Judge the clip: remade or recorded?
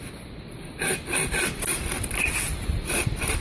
recorded